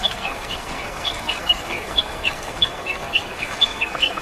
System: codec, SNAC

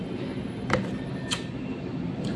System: none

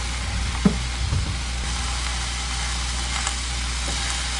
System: none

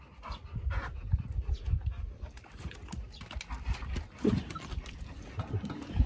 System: none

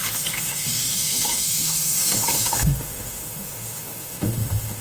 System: autoencoder, DAC-VAE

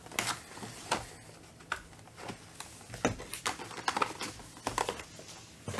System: none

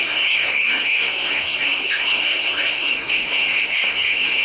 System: codec, SNAC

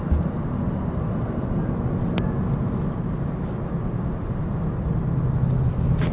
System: none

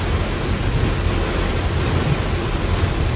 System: none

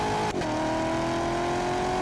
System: none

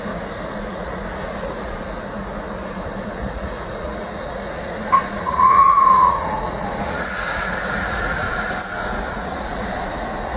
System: vocoder, Vocos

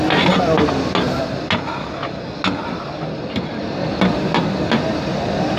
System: none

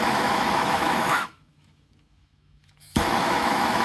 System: autoencoder, DAC-VAE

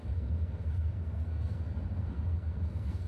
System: codec, SNAC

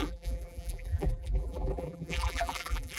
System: vocoder, BigVGAN v2